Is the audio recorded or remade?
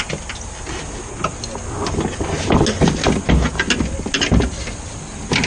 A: recorded